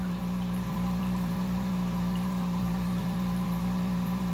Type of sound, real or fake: fake